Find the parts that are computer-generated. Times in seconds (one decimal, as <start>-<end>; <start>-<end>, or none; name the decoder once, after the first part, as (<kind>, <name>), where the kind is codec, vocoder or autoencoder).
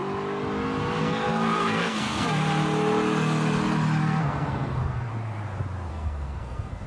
1.0-2.4 (codec, SNAC); 4.0-5.1; 5.9-6.9